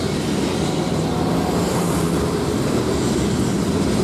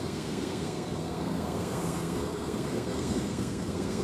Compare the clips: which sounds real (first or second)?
first